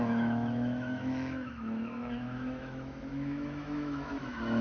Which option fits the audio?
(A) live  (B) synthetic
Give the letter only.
B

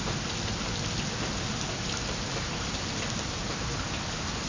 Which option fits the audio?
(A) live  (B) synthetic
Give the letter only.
A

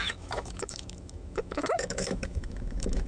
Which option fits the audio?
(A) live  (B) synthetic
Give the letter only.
B